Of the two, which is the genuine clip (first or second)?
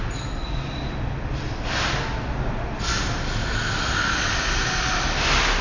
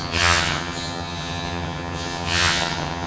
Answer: first